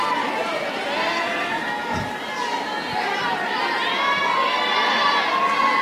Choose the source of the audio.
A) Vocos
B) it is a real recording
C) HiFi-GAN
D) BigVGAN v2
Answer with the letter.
B